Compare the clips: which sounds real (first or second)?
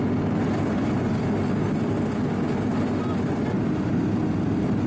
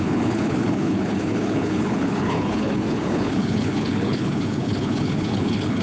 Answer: first